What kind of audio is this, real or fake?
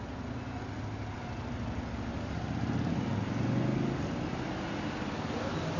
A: real